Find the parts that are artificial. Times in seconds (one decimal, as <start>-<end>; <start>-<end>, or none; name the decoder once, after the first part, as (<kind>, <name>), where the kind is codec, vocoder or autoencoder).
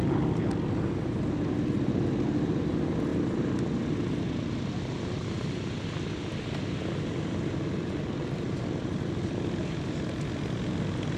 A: none